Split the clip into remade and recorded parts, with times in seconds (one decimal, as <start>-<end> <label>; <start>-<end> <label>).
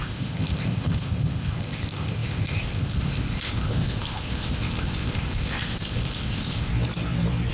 0.0-6.7 remade; 6.7-7.5 recorded